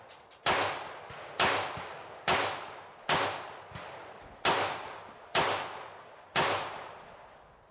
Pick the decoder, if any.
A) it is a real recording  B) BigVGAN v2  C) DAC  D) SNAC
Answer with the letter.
A